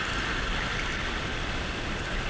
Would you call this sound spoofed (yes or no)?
no